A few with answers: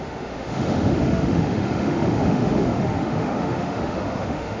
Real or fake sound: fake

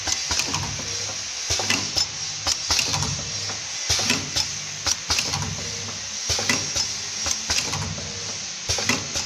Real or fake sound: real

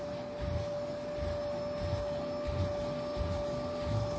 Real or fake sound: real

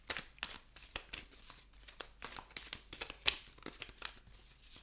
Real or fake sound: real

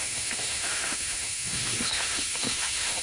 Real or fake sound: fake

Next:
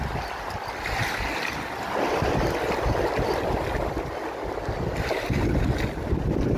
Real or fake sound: real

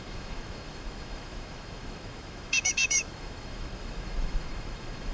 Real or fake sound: fake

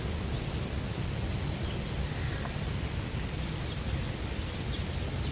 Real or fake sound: real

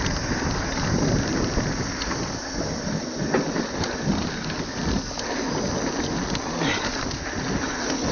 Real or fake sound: real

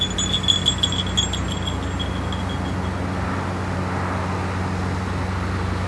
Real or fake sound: real